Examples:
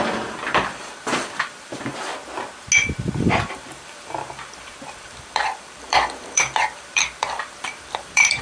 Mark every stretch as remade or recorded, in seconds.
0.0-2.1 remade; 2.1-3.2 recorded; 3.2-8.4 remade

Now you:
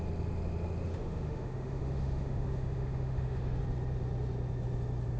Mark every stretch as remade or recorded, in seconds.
0.0-0.9 recorded; 0.9-3.6 remade; 3.6-5.2 recorded

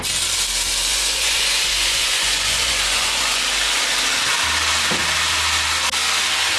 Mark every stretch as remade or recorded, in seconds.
0.0-0.9 recorded; 0.9-3.4 remade; 3.4-6.6 recorded

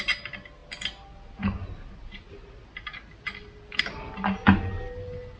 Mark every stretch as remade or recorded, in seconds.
0.0-5.4 recorded